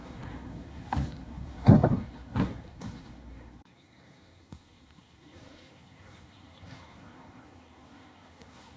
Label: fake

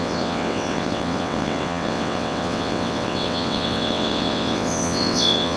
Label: fake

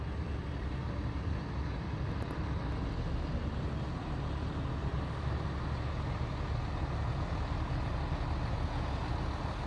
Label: real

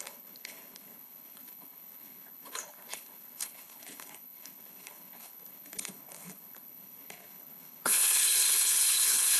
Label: fake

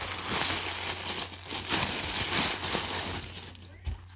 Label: real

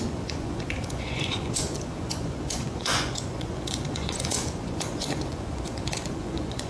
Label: fake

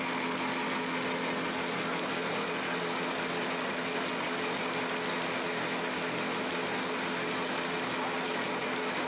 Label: real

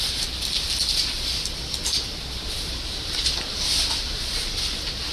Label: real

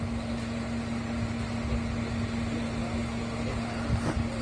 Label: real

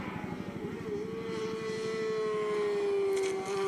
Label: real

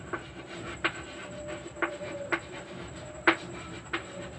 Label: fake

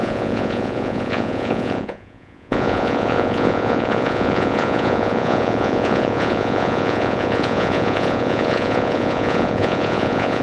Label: fake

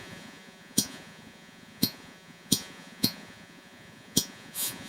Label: fake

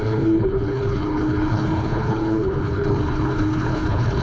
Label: fake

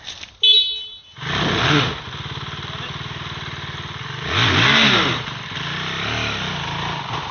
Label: real